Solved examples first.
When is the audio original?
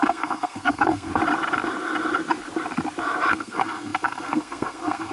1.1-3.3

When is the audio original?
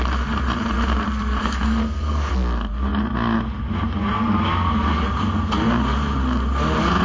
0.0-1.4; 2.3-7.0